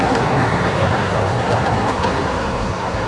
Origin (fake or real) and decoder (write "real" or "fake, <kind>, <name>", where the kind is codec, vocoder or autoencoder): fake, codec, SNAC